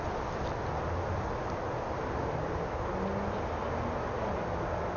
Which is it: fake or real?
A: real